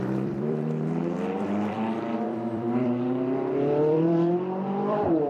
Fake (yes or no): yes